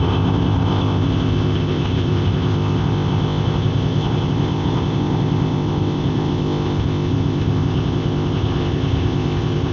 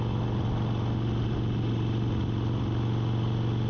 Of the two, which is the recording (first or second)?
second